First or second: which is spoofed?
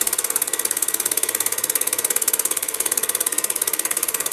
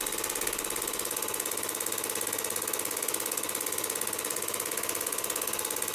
first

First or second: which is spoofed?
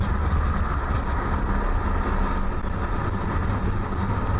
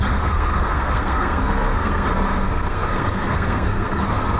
second